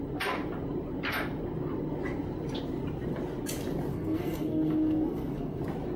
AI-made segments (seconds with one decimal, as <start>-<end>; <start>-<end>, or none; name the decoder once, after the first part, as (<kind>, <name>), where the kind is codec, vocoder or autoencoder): 3.9-5.6 (codec, SNAC)